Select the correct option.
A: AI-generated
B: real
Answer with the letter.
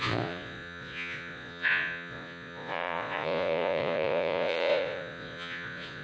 A